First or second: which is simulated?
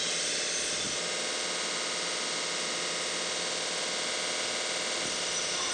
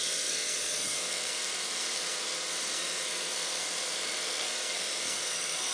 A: second